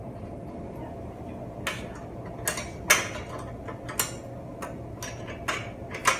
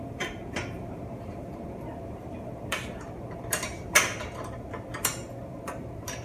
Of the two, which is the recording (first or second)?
first